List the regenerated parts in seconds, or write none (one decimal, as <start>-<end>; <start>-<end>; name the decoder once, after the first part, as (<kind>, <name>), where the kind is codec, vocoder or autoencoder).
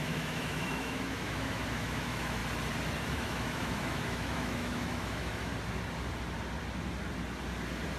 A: 0.0-2.4 (autoencoder, DAC-VAE); 3.1-5.5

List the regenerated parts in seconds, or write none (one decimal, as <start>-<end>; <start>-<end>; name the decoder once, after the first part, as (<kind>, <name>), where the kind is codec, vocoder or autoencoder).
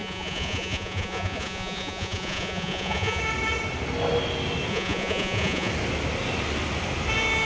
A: 0.0-3.2 (vocoder, Vocos); 4.7-5.7